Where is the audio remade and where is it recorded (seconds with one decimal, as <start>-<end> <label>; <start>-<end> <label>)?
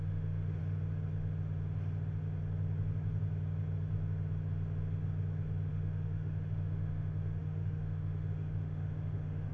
0.0-0.6 remade; 0.6-5.7 recorded; 5.7-9.5 remade